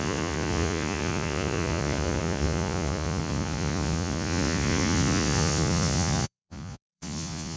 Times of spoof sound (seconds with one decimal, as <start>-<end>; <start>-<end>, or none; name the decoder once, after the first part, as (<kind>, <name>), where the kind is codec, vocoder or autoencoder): 0.0-7.6 (vocoder, Vocos)